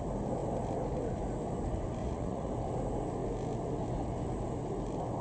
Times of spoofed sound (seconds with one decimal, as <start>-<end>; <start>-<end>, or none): 2.0-2.5